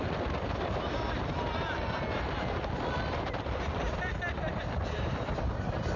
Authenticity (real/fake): real